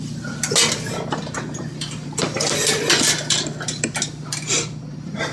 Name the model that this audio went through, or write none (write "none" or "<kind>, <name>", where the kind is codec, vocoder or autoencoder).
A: none